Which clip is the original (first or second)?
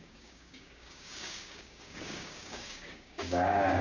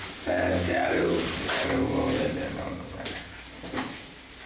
second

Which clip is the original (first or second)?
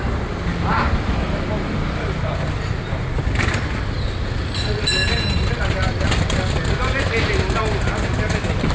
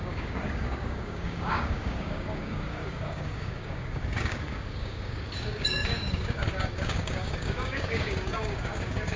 first